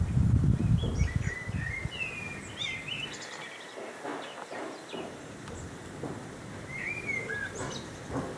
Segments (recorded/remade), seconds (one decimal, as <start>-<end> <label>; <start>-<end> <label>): 0.0-4.1 recorded; 4.1-6.6 remade; 6.6-8.4 recorded